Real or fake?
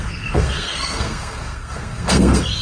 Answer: fake